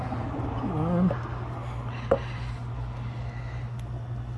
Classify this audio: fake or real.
real